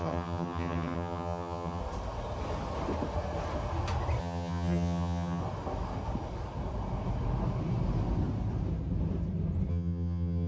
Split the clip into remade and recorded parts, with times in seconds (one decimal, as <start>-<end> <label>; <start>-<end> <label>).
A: 0.0-1.8 remade; 1.8-4.2 recorded; 4.2-5.4 remade; 5.4-9.7 recorded; 9.7-10.5 remade